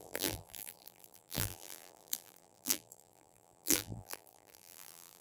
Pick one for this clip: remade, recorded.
remade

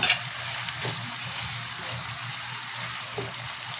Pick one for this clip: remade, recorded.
recorded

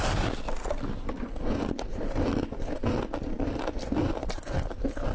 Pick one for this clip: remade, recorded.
recorded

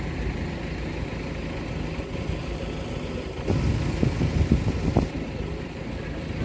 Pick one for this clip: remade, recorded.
recorded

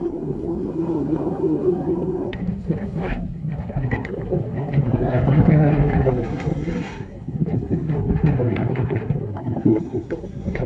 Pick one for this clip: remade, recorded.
remade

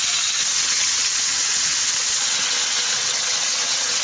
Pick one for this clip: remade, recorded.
remade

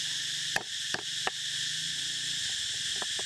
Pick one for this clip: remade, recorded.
recorded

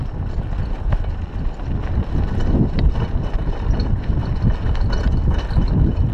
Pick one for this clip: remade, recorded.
recorded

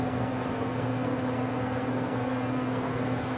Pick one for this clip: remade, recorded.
remade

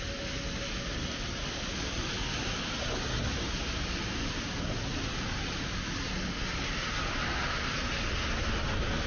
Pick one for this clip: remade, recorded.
recorded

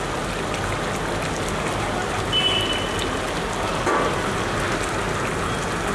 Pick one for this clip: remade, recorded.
recorded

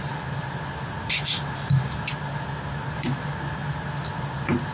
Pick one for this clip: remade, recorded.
recorded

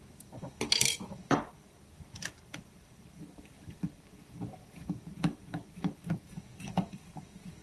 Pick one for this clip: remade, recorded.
remade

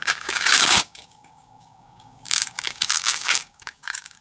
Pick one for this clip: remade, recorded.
remade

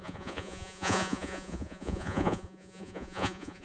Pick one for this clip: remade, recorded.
remade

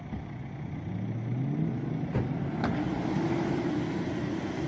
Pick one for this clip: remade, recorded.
recorded